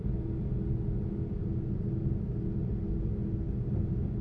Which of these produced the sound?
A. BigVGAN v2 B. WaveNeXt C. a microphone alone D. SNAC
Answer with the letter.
C